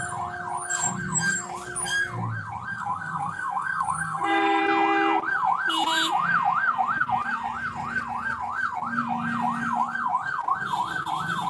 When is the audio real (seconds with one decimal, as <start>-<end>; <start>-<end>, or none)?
0.0-2.7; 4.6-11.5